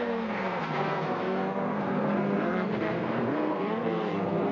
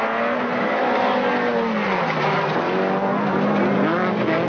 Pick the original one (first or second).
second